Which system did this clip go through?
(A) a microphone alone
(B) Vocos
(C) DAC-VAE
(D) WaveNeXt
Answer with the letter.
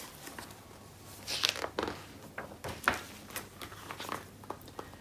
A